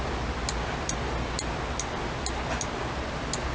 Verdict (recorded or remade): recorded